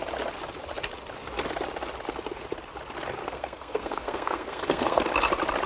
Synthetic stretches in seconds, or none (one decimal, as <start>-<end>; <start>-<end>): 3.2-5.0